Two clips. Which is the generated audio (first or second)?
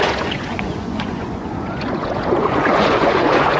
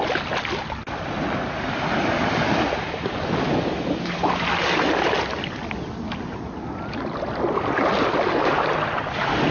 first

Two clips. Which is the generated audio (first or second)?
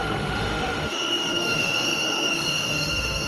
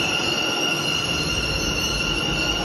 first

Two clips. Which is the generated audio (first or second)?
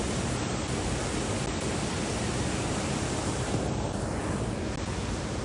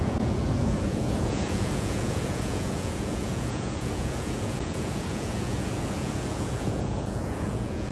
second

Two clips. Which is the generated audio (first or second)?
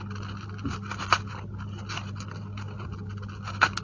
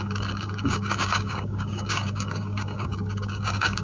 second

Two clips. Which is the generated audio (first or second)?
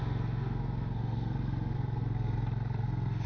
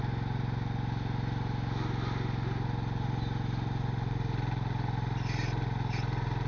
first